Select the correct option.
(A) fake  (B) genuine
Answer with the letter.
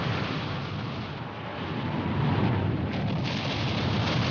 B